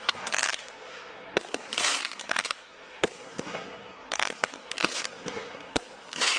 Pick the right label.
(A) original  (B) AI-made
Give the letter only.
B